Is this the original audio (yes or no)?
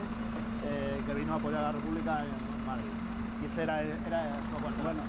yes